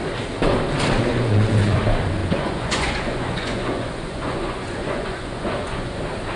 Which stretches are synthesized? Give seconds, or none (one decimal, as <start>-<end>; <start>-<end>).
1.1-1.8; 2.2-6.0